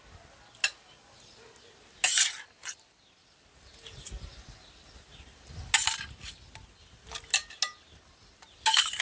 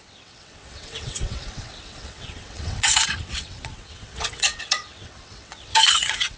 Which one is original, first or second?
first